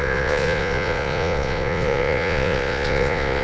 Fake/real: fake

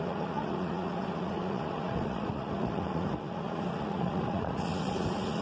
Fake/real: fake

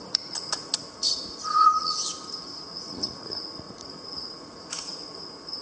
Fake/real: fake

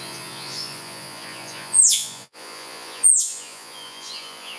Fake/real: fake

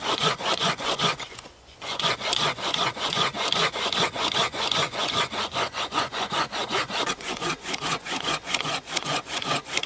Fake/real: fake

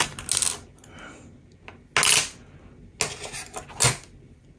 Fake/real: real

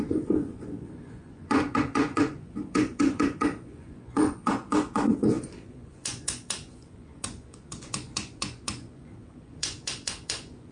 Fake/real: fake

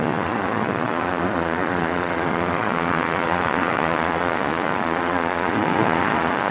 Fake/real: fake